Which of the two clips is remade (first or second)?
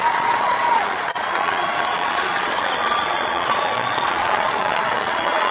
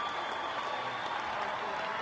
first